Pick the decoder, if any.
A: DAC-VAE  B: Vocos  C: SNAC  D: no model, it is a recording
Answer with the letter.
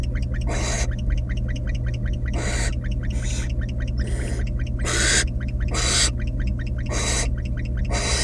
D